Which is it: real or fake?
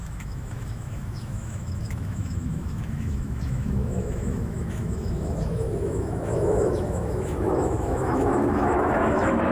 fake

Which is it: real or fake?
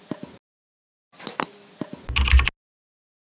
real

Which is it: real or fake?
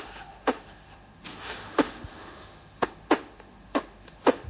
fake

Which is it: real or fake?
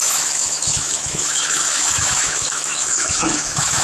fake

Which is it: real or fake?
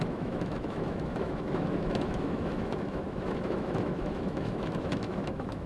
fake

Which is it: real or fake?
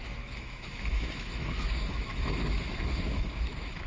fake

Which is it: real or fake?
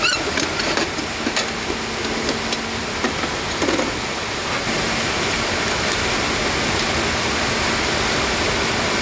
real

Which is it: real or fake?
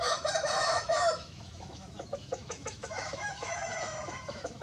fake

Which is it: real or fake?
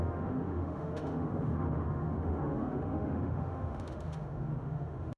fake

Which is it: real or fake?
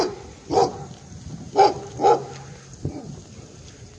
real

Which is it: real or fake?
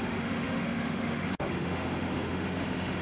fake